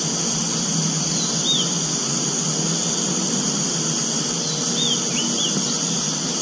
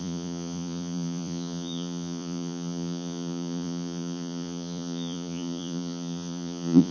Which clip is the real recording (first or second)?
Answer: first